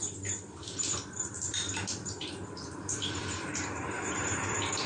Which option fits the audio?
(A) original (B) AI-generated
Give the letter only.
B